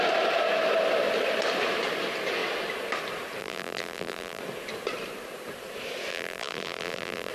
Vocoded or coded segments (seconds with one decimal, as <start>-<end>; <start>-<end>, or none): 3.4-4.4; 6.1-7.3